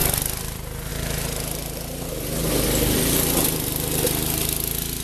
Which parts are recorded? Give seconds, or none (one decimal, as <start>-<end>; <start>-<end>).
0.9-5.0